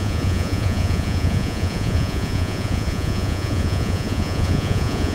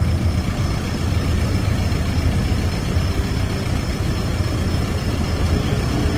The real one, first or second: second